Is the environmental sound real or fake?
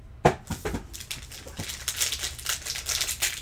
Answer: real